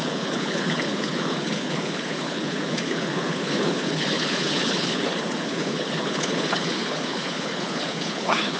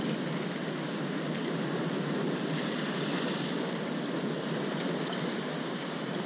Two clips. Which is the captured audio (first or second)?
second